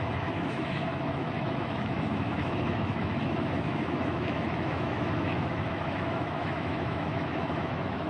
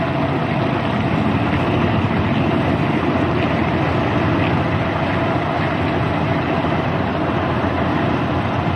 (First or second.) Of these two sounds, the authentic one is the second